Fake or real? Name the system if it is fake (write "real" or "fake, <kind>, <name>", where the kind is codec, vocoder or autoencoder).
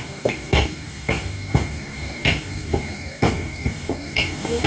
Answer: fake, codec, DAC